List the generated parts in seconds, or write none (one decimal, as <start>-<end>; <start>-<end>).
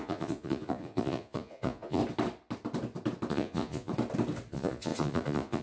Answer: 0.0-2.0; 3.3-3.9; 4.5-5.6